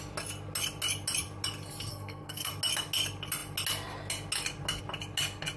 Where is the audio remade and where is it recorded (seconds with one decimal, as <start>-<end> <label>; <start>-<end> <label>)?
0.0-1.9 recorded; 1.9-2.5 remade; 2.5-5.6 recorded

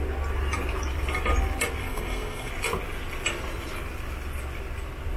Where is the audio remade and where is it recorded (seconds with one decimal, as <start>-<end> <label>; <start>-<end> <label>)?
0.0-1.8 recorded; 1.8-2.5 remade; 2.5-5.2 recorded

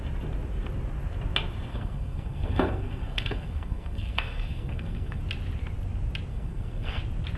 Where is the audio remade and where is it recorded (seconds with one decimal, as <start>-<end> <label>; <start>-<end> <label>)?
0.0-1.7 recorded; 1.7-5.2 remade; 5.2-6.3 recorded; 6.3-7.0 remade; 7.0-7.4 recorded

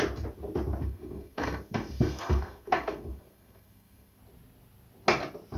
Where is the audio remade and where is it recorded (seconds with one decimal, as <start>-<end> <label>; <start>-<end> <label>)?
0.0-0.8 recorded; 0.8-4.2 remade; 4.2-5.6 recorded

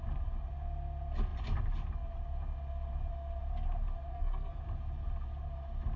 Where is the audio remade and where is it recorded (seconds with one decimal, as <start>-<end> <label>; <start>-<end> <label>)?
0.0-4.1 recorded; 4.1-4.6 remade; 4.6-6.0 recorded

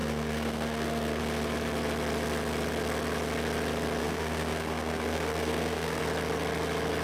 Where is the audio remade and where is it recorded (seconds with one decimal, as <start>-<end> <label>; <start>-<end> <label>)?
0.0-1.2 remade; 1.2-4.0 recorded; 4.0-6.0 remade; 6.0-7.0 recorded

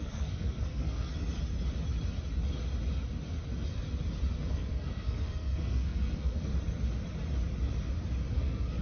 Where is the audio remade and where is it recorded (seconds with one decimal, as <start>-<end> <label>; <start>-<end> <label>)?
0.0-1.1 remade; 1.1-4.5 recorded; 4.5-6.5 remade; 6.5-8.3 recorded; 8.3-8.8 remade

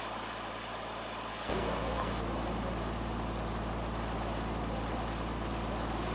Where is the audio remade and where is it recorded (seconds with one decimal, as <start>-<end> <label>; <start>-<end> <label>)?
0.0-1.3 recorded; 1.3-2.1 remade; 2.1-6.1 recorded